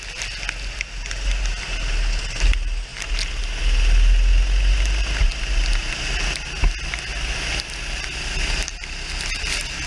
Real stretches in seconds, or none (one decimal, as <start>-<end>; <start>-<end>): 0.0-9.9